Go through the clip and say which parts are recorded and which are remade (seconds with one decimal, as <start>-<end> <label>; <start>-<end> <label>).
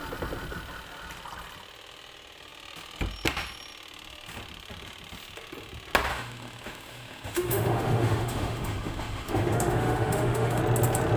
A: 0.0-6.1 recorded; 6.1-10.6 remade; 10.6-11.2 recorded